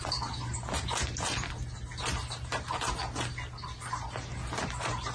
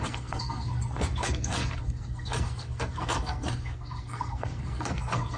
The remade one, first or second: second